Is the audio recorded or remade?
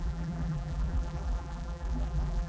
remade